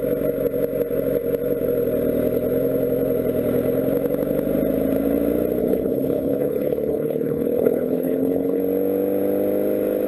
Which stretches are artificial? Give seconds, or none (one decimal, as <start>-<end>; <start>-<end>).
5.6-8.6